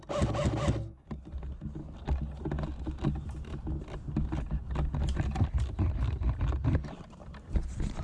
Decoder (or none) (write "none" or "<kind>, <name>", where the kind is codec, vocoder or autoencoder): none